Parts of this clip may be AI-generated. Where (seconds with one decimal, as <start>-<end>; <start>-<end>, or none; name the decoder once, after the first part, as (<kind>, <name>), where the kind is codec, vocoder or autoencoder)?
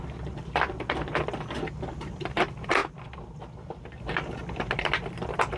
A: none